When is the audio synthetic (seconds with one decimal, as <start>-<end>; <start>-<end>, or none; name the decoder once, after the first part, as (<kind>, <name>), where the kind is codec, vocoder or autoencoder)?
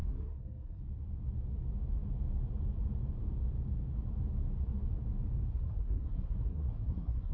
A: 0.0-0.8 (codec, SNAC); 5.5-7.3